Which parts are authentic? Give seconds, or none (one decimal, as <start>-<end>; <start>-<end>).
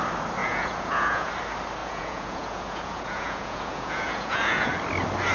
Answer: 0.0-0.4; 1.3-1.8; 4.7-5.3